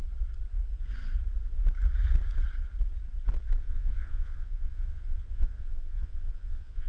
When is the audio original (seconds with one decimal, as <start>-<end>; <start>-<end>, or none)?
0.0-3.6